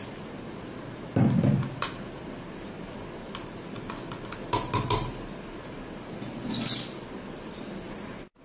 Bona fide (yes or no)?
yes